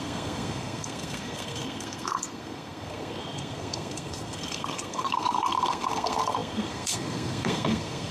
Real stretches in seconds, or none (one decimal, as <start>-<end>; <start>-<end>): none